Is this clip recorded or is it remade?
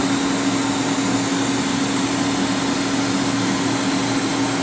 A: recorded